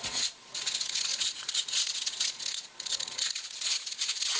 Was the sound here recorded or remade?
remade